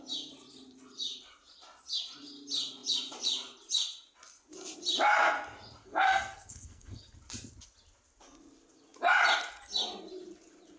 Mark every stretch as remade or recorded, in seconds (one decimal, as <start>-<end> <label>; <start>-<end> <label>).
0.0-5.8 recorded; 5.8-7.0 remade; 7.0-10.8 recorded